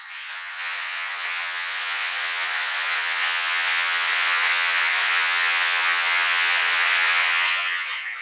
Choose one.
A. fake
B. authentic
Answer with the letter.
A